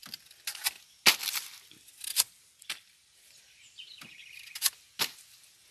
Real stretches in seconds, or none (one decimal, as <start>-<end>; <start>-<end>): 0.0-2.6; 4.2-5.1